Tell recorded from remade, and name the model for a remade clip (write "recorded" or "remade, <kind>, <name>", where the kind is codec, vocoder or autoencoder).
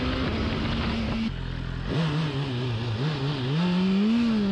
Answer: recorded